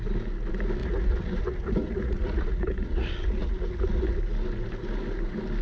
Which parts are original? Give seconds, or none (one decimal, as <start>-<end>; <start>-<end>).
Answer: 0.0-0.8; 4.2-5.6

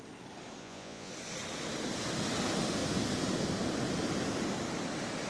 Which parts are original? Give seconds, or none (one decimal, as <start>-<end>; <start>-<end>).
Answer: 0.0-0.6; 1.1-5.3

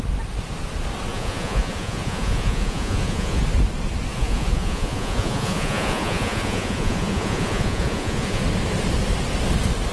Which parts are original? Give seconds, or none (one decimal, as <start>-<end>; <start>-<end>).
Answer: 0.0-1.1; 3.4-4.1; 8.4-9.9

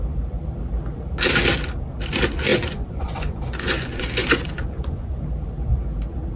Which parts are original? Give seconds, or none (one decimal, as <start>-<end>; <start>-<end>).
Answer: 0.0-2.5; 5.1-6.4

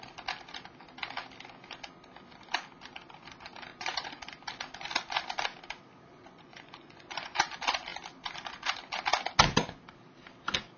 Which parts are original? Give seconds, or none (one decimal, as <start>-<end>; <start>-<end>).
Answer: 0.0-3.7; 4.2-6.1; 7.4-10.8

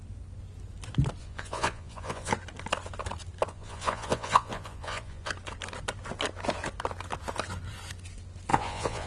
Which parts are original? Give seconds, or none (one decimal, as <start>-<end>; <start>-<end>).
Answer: 0.0-1.2; 2.3-3.5; 5.3-8.5

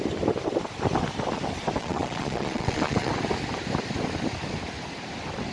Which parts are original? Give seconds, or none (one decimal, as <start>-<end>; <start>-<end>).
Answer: 0.0-1.8; 3.1-5.5

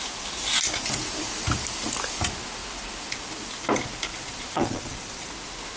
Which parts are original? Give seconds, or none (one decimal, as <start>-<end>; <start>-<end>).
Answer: 0.0-4.1; 5.3-5.8